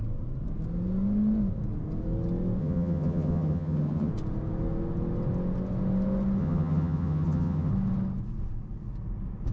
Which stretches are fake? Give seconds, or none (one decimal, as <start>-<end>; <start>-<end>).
2.6-4.1; 6.4-7.7